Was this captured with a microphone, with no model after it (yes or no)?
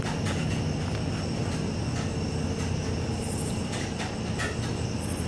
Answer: yes